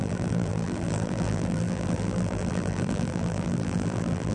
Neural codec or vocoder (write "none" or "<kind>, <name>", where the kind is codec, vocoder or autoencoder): vocoder, BigVGAN v2